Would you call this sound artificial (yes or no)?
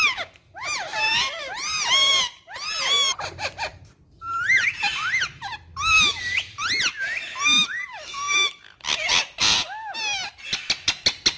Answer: no